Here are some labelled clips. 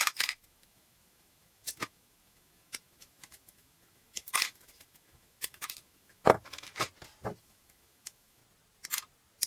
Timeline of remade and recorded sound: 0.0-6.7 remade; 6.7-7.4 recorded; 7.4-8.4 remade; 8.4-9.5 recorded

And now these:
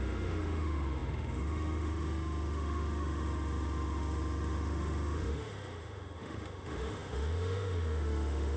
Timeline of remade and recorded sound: 0.0-8.6 remade

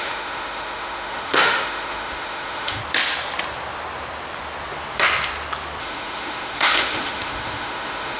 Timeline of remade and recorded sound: 0.0-2.8 remade; 2.8-5.8 recorded; 5.8-8.2 remade

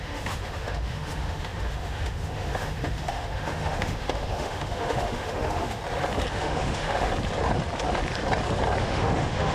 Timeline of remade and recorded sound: 0.0-5.8 remade; 5.8-6.3 recorded; 6.3-7.1 remade; 7.1-8.8 recorded; 8.8-9.5 remade

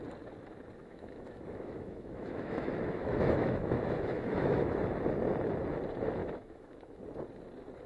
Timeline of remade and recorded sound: 0.0-0.8 recorded; 0.8-4.8 remade; 4.8-6.2 recorded; 6.2-7.0 remade; 7.0-7.9 recorded

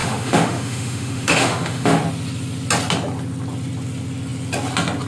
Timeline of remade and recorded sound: 0.0-2.0 remade; 2.0-5.1 recorded